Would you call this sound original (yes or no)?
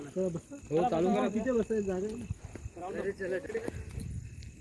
yes